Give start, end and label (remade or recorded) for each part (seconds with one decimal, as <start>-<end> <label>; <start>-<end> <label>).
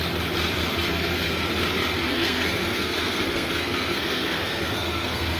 0.0-0.7 recorded; 0.7-1.5 remade; 1.5-2.0 recorded; 2.0-5.4 remade